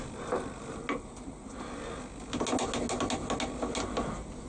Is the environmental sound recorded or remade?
recorded